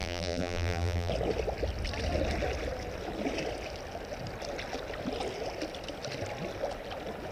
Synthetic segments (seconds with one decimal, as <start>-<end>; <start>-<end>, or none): 0.0-1.1